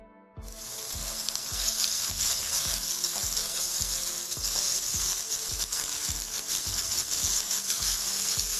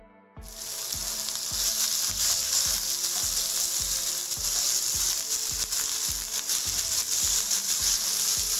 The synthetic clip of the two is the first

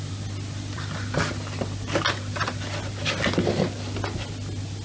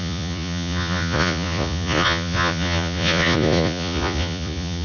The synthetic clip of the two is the second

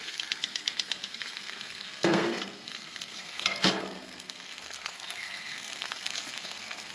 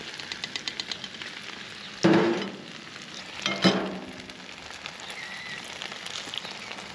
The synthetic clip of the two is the first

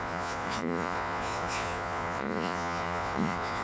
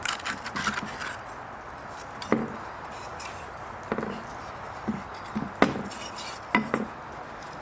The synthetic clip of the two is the first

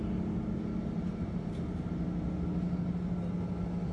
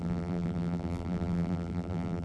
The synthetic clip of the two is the second